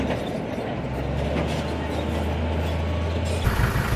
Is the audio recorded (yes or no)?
yes